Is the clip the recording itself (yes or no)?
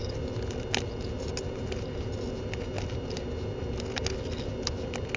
yes